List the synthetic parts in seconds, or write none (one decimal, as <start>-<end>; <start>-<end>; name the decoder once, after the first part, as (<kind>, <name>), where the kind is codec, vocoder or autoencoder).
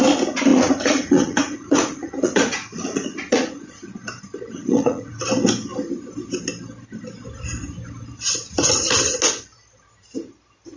0.5-3.8 (vocoder, Vocos); 4.6-5.2